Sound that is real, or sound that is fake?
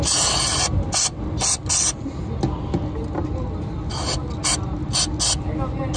real